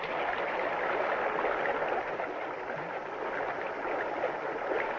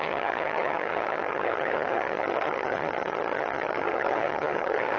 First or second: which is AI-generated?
second